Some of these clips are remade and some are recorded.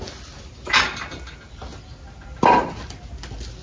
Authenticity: recorded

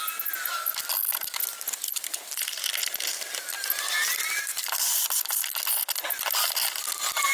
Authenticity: recorded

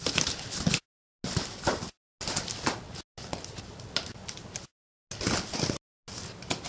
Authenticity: recorded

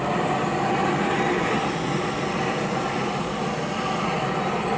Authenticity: recorded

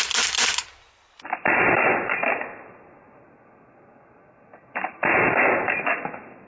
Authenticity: recorded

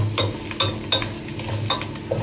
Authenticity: recorded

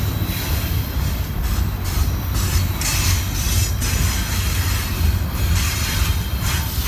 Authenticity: recorded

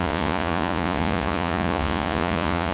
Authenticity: remade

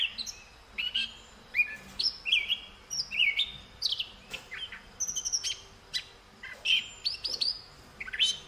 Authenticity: recorded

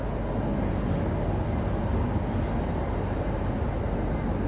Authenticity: recorded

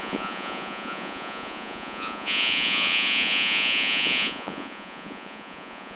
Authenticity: remade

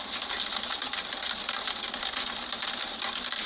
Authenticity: recorded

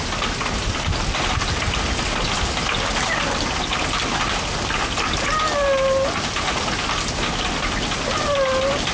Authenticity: recorded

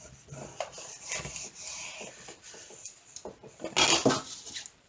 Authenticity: recorded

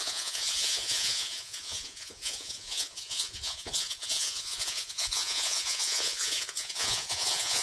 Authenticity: remade